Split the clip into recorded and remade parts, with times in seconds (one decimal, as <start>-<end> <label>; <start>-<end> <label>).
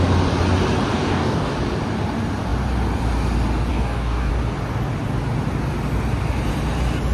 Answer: 0.0-0.9 recorded; 0.9-1.5 remade; 1.5-3.7 recorded; 3.7-4.3 remade; 4.3-7.1 recorded